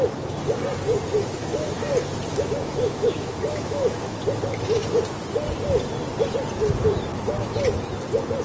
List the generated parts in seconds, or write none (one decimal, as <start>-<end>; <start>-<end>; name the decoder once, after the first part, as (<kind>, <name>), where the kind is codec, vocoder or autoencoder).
2.3-4.2 (autoencoder, DAC-VAE); 7.1-7.6